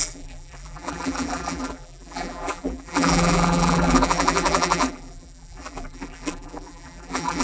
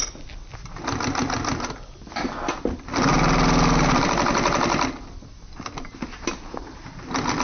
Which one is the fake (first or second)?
first